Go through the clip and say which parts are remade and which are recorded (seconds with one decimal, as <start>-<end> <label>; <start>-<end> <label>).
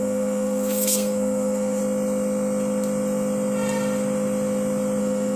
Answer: 0.0-1.8 remade; 1.8-5.0 recorded; 5.0-5.4 remade